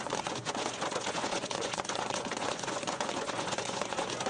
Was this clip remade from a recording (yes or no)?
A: yes